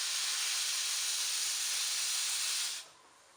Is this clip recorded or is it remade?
recorded